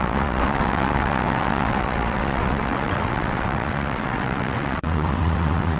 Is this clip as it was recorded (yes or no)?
no